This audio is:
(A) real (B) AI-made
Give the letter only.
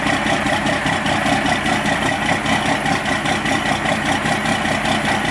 A